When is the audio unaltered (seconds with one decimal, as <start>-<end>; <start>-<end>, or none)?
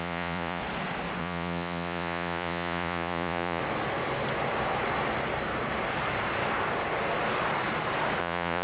0.6-1.2; 3.6-8.2